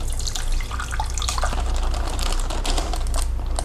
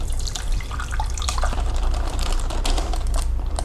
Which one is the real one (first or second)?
first